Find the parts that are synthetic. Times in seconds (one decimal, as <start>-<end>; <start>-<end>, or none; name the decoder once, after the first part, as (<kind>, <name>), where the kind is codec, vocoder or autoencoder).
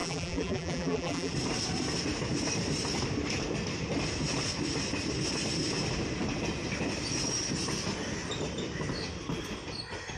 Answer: 0.0-1.3 (vocoder, BigVGAN v2)